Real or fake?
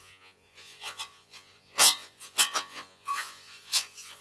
fake